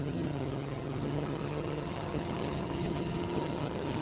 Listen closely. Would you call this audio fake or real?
fake